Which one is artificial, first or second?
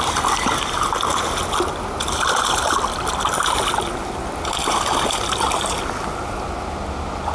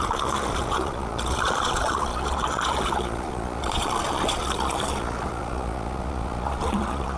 second